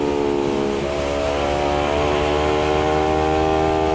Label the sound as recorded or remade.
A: recorded